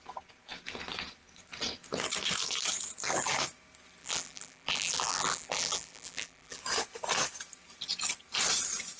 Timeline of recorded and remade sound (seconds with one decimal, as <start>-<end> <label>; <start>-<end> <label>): 0.0-4.0 recorded; 4.0-6.6 remade; 6.6-9.0 recorded